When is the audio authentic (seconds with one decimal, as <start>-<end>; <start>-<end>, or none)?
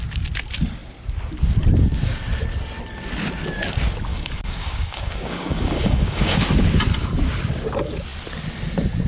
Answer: 0.0-4.1; 6.4-9.1